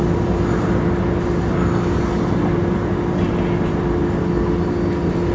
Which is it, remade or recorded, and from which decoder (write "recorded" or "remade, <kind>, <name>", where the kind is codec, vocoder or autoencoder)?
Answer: recorded